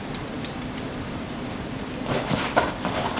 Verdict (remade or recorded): remade